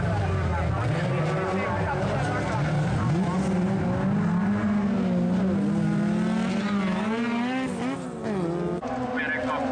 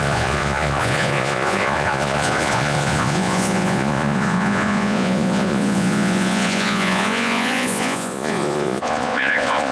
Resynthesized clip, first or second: second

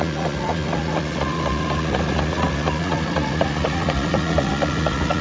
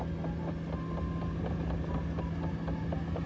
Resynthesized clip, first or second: first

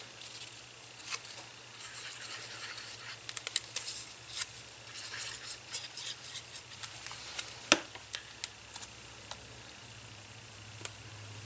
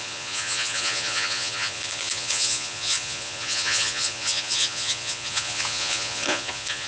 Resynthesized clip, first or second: second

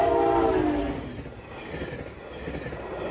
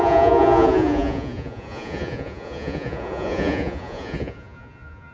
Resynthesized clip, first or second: second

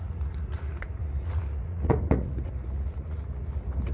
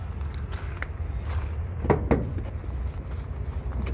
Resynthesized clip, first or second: first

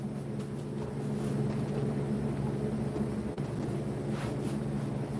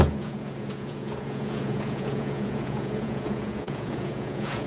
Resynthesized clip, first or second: second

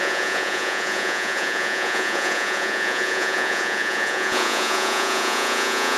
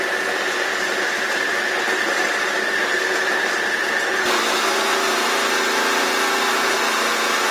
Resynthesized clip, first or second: first